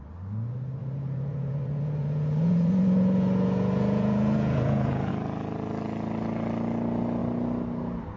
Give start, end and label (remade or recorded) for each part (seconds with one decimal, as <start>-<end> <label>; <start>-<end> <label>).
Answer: 0.0-0.8 recorded; 0.8-5.1 remade; 5.1-8.2 recorded